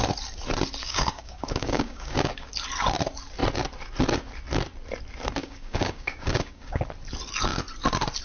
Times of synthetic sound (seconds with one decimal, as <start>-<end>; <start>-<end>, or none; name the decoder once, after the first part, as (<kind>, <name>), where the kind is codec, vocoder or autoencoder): 0.8-2.5 (codec, DAC); 5.4-6.8